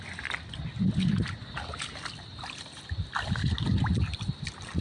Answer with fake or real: real